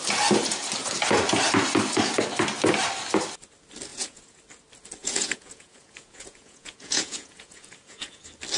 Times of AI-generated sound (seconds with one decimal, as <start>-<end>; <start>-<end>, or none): 3.9-4.4; 5.0-8.2